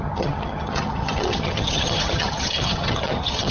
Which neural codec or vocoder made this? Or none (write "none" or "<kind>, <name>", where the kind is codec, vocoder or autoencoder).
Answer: vocoder, HiFi-GAN